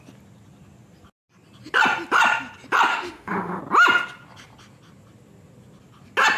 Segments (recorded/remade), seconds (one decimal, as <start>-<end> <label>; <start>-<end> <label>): 0.0-2.9 recorded; 2.9-3.6 remade; 3.6-6.4 recorded